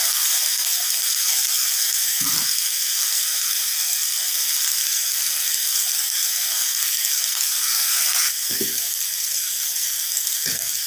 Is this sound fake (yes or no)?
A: yes